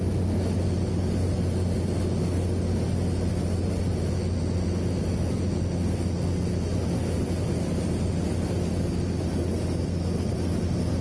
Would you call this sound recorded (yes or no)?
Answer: yes